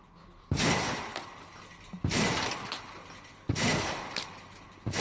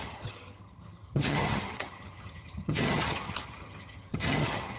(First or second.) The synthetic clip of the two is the second